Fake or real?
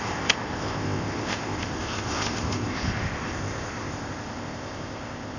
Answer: fake